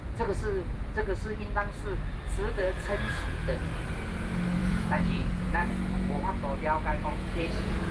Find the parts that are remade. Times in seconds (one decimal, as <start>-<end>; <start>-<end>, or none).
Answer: 2.6-3.5; 4.6-5.7; 6.9-7.9